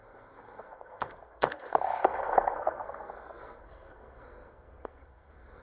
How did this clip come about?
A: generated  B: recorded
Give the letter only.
A